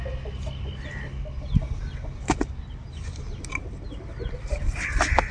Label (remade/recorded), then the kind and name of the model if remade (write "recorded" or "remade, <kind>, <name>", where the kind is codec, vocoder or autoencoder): recorded